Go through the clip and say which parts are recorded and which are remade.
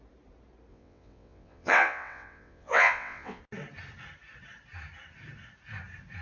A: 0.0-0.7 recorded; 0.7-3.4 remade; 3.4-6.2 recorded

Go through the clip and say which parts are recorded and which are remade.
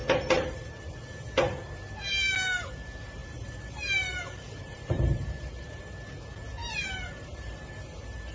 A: 0.0-3.2 recorded; 3.2-5.8 remade; 5.8-6.6 recorded; 6.6-7.7 remade; 7.7-8.3 recorded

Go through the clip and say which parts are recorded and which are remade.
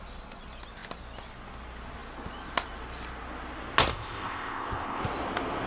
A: 0.0-3.9 recorded; 3.9-5.0 remade; 5.0-5.7 recorded